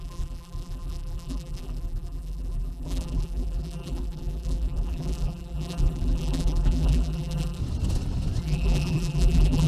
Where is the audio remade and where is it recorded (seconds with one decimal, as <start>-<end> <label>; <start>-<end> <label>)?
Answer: 0.0-7.6 remade; 7.6-8.4 recorded; 8.4-9.7 remade